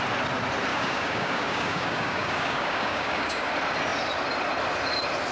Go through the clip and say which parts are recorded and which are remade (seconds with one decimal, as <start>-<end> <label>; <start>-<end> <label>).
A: 0.0-0.7 recorded; 0.7-3.5 remade; 3.5-5.3 recorded

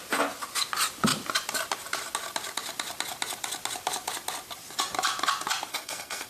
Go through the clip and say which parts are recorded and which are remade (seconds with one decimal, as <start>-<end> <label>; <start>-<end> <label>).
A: 0.0-5.7 recorded; 5.7-6.3 remade

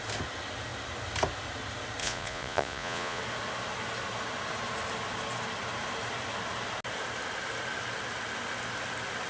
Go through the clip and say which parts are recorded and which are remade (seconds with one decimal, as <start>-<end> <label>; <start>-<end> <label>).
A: 0.0-2.0 recorded; 2.0-3.2 remade; 3.2-9.3 recorded

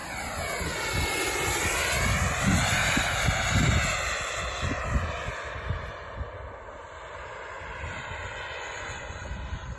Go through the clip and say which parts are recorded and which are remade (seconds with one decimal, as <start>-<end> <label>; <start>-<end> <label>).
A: 0.0-8.3 recorded; 8.3-9.3 remade; 9.3-9.8 recorded

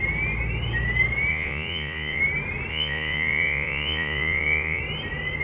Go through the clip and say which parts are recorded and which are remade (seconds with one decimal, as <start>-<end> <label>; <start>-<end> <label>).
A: 0.0-1.3 recorded; 1.3-2.2 remade; 2.2-2.7 recorded; 2.7-4.8 remade; 4.8-5.4 recorded

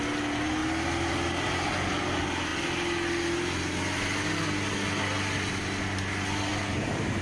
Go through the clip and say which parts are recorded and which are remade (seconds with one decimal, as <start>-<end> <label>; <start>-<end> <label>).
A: 0.0-6.5 recorded; 6.5-7.2 remade

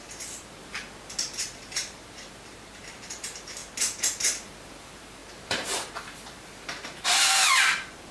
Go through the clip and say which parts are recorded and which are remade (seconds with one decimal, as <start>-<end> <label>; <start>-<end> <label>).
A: 0.0-0.6 remade; 0.6-1.4 recorded; 1.4-3.6 remade; 3.6-4.8 recorded; 4.8-8.1 remade

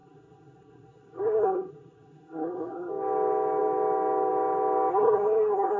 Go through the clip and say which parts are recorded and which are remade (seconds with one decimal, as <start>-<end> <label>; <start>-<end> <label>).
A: 0.0-2.9 remade; 2.9-4.9 recorded; 4.9-5.8 remade